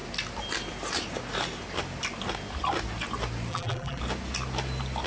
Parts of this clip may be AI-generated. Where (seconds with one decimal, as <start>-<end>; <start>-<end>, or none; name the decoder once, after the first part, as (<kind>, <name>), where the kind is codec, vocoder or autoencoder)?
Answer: 3.5-4.0 (vocoder, BigVGAN v2)